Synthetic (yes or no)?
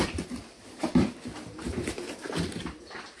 no